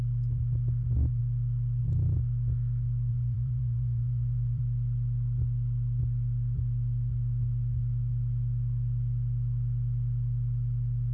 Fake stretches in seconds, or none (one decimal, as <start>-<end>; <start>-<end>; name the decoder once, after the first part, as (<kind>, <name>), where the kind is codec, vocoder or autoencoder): 3.1-4.6 (vocoder, BigVGAN v2)